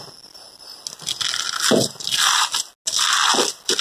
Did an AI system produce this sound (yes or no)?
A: no